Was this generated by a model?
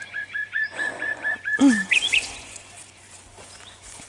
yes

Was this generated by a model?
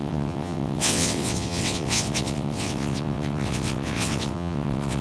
yes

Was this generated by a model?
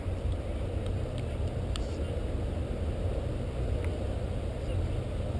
no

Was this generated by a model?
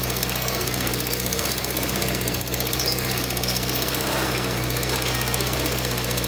yes